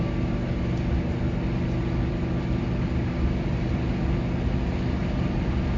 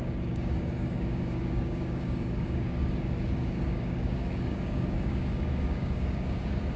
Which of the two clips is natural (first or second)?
first